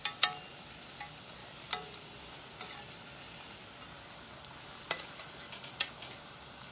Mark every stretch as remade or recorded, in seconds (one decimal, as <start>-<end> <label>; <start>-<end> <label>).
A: 0.0-6.7 recorded